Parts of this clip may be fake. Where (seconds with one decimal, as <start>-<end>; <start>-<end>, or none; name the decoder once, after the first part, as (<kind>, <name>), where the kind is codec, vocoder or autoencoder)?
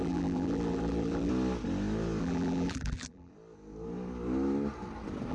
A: 0.0-1.3 (vocoder, BigVGAN v2); 2.2-3.3